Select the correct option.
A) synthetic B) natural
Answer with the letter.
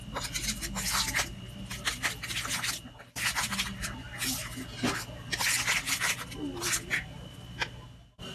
B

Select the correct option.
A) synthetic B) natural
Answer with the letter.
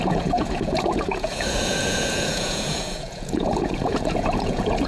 A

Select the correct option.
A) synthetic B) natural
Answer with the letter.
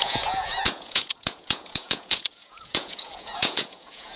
A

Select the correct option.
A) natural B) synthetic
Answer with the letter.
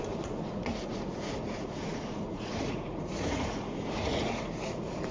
B